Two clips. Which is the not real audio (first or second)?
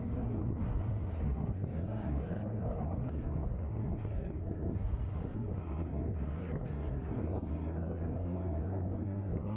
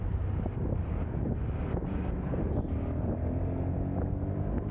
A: first